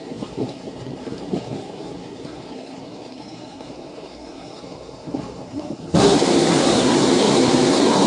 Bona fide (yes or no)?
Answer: no